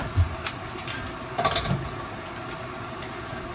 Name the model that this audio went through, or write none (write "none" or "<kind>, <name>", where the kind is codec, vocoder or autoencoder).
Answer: none